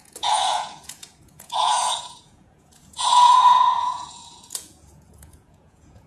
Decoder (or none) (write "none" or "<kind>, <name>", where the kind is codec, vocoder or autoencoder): vocoder, Vocos